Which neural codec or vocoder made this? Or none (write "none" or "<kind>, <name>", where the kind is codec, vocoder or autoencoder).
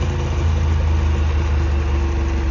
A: none